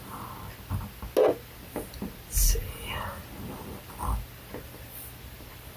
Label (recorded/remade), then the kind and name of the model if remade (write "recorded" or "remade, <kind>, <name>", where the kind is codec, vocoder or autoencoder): recorded